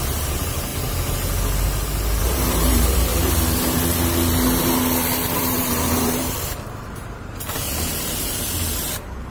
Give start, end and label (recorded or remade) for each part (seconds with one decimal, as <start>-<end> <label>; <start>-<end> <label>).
0.0-0.7 remade; 0.7-2.2 recorded; 2.2-3.1 remade; 3.1-5.4 recorded; 5.4-9.3 remade